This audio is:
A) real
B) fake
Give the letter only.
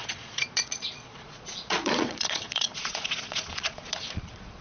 B